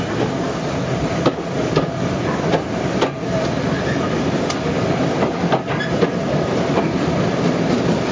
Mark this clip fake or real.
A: real